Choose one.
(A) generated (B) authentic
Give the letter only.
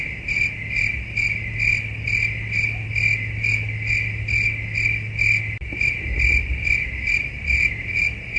B